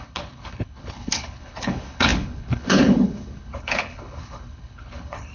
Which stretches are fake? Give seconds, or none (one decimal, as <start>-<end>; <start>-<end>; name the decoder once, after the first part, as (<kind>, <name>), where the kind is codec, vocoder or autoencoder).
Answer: 0.0-5.3 (codec, HILCodec)